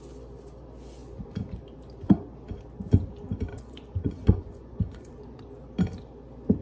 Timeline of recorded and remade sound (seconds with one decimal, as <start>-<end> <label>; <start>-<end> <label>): 0.0-3.5 recorded; 3.5-5.4 remade; 5.4-6.6 recorded